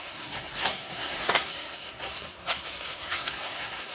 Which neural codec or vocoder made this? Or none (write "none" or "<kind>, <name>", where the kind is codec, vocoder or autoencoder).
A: codec, SNAC